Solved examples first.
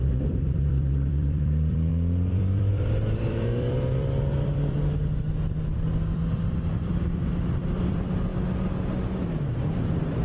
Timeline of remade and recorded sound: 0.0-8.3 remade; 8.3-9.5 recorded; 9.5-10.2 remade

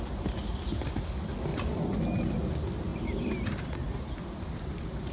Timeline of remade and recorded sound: 0.0-2.9 recorded; 2.9-4.3 remade; 4.3-5.1 recorded

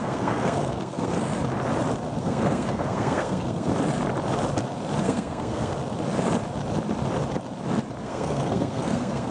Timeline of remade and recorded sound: 0.0-1.3 remade; 1.3-2.2 recorded; 2.2-3.7 remade; 3.7-5.0 recorded; 5.0-5.7 remade; 5.7-8.0 recorded; 8.0-9.3 remade

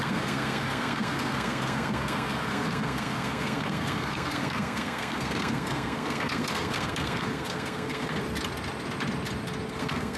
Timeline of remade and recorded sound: 0.0-8.2 remade; 8.2-9.7 recorded; 9.7-10.2 remade

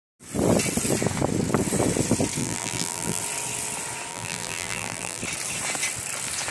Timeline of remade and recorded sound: 0.0-2.4 recorded; 2.4-3.2 remade; 3.2-4.1 recorded; 4.1-5.2 remade; 5.2-6.5 recorded

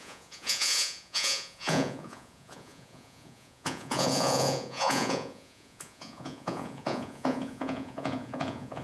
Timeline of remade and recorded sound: 0.0-8.8 remade

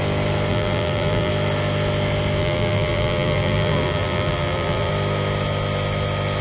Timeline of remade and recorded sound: 0.0-0.5 recorded; 0.5-1.3 remade; 1.3-2.4 recorded; 2.4-4.9 remade; 4.9-6.4 recorded